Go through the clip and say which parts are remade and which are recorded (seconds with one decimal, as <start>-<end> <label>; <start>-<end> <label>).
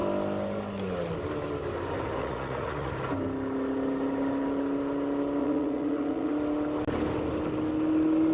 0.0-2.2 recorded; 2.2-2.9 remade; 2.9-5.4 recorded; 5.4-6.3 remade; 6.3-8.3 recorded